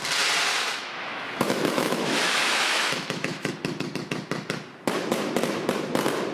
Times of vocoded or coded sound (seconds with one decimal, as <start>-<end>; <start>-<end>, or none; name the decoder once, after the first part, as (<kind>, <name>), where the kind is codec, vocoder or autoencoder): 0.5-3.5 (autoencoder, DAC-VAE)